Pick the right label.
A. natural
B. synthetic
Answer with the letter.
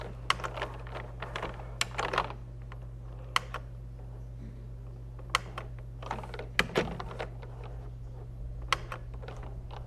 A